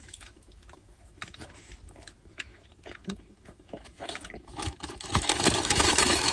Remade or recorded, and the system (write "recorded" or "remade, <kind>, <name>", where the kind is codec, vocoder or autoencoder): remade, autoencoder, DAC-VAE